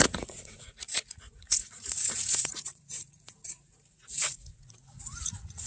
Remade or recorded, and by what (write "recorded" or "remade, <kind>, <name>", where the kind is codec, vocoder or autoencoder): remade, vocoder, Vocos